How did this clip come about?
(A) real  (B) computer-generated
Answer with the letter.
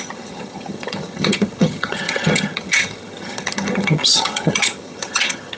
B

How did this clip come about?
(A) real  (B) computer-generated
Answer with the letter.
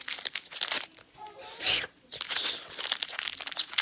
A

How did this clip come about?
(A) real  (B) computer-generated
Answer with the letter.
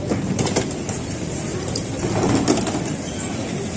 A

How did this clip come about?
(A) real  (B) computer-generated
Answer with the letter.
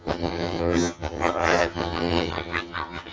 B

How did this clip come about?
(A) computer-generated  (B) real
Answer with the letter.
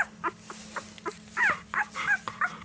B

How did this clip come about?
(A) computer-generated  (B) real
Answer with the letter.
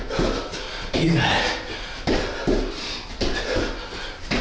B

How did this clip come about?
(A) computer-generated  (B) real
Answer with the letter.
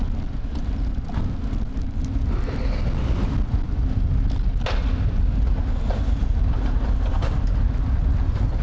B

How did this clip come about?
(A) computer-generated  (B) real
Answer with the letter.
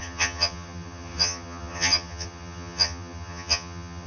A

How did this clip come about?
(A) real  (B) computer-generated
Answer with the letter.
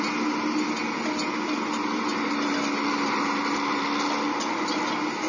A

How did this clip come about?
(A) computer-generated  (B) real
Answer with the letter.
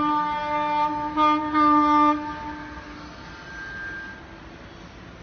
B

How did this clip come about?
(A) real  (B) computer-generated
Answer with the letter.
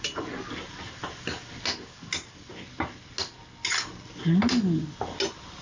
A